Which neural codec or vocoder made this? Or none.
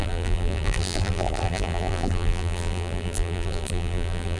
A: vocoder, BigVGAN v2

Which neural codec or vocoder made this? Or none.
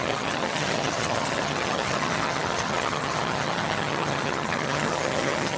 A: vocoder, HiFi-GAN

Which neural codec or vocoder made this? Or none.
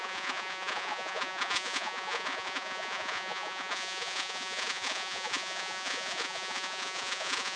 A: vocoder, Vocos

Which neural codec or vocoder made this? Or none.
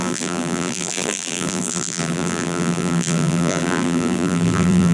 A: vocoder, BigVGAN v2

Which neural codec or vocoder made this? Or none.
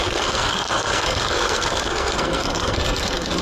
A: codec, SNAC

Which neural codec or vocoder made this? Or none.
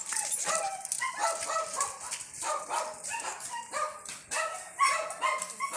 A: vocoder, BigVGAN v2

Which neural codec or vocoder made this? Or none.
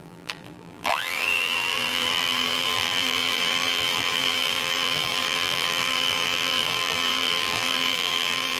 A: vocoder, BigVGAN v2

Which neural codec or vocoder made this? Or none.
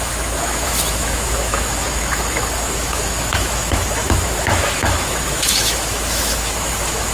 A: autoencoder, DAC-VAE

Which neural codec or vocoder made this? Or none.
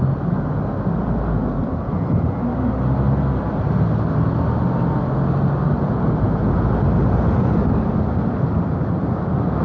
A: none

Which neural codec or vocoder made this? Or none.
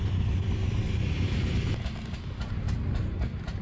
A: none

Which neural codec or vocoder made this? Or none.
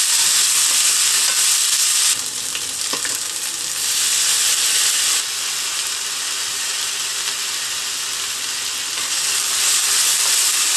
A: none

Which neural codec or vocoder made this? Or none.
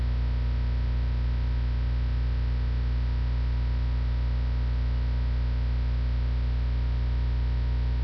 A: none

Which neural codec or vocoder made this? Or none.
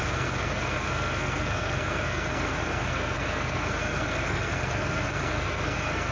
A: codec, SNAC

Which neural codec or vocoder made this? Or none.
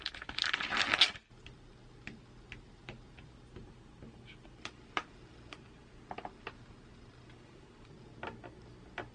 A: none